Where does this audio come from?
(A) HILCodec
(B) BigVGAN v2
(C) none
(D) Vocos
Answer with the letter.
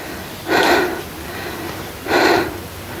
C